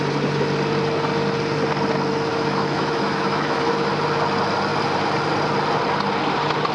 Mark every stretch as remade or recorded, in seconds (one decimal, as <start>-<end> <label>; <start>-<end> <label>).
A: 0.0-2.3 recorded; 2.3-3.9 remade; 3.9-6.7 recorded